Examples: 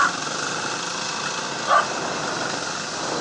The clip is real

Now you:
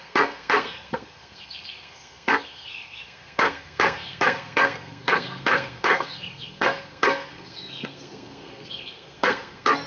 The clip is fake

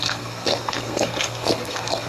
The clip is fake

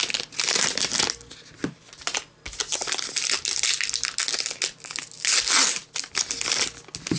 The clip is real